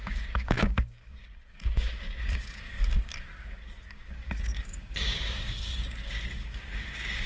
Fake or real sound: fake